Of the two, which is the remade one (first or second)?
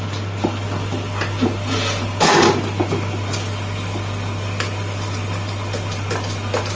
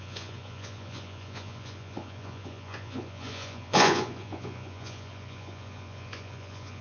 second